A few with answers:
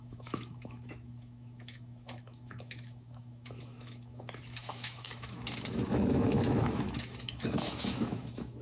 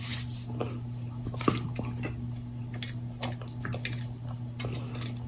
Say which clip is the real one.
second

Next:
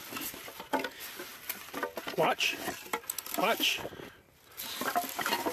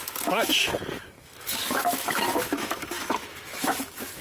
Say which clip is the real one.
first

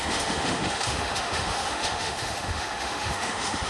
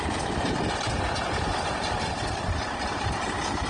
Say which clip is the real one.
second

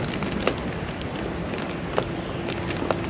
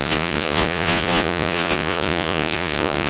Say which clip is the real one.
first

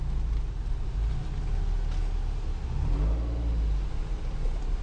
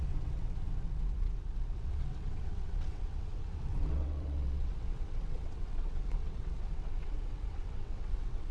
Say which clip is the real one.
first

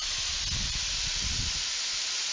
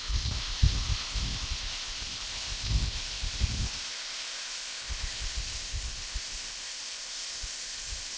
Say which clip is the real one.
first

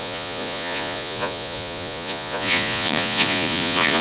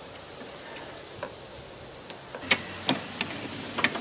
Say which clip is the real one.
second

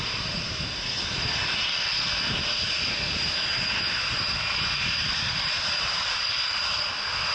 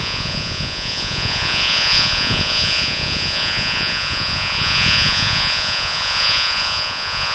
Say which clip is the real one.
first